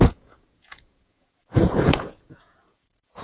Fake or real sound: fake